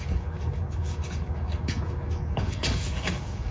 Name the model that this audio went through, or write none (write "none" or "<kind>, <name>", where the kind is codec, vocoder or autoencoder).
codec, DAC